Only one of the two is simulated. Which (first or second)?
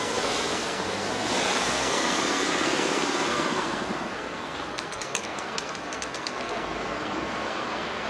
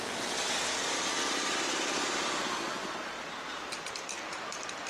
first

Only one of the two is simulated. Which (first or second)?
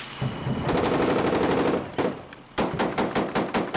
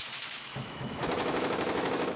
second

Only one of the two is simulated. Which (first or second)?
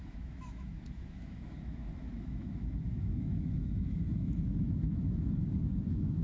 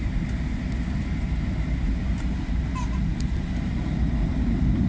first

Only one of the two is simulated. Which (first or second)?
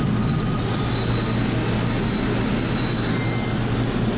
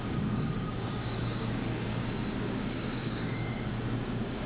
second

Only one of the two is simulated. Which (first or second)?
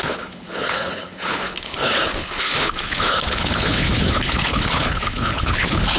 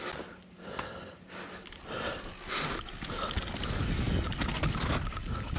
first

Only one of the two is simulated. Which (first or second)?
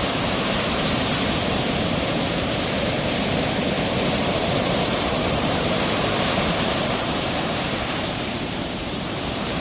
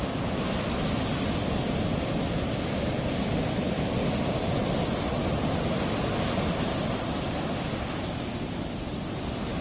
first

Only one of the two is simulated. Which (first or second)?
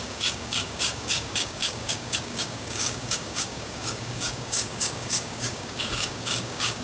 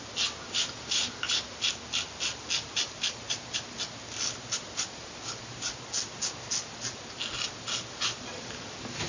first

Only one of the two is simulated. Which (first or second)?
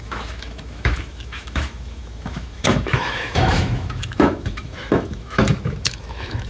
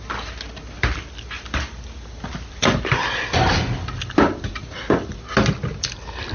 first